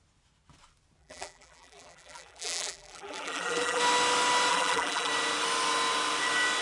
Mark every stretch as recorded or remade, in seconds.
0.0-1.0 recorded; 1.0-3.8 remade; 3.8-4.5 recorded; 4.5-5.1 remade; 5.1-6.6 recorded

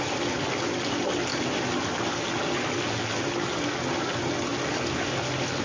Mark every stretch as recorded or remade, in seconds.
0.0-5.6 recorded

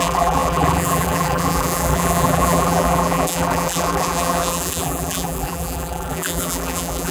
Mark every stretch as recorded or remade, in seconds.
0.0-7.1 remade

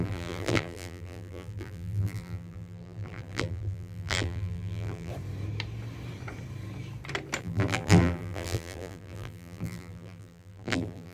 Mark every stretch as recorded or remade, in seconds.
0.0-5.1 remade; 5.1-7.4 recorded; 7.4-11.1 remade